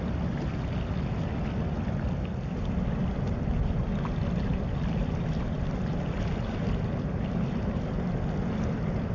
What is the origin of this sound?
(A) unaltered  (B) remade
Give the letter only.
A